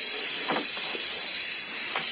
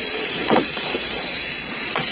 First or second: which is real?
first